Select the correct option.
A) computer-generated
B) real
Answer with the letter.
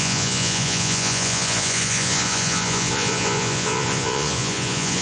A